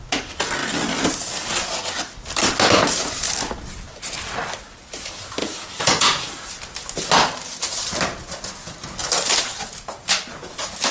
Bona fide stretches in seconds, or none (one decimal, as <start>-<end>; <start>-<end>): 0.0-5.4; 6.5-10.9